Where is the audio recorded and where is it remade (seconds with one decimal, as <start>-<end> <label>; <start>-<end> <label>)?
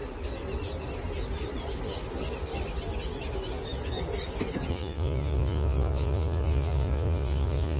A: 0.0-4.7 recorded; 4.7-7.8 remade